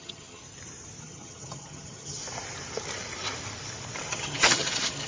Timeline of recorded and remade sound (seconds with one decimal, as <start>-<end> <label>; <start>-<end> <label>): 0.0-0.4 remade; 0.4-1.0 recorded; 1.0-2.2 remade; 2.2-4.1 recorded; 4.1-5.1 remade